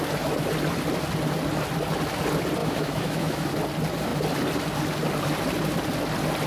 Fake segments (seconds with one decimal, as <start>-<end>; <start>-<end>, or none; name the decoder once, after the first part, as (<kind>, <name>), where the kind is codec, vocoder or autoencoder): 2.6-3.5 (autoencoder, DAC-VAE)

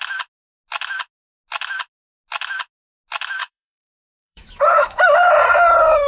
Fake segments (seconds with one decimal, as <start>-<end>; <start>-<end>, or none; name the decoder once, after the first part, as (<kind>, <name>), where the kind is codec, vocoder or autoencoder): 3.4-5.3 (autoencoder, DAC-VAE)